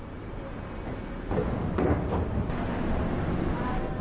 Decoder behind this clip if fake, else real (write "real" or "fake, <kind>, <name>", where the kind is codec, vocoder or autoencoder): real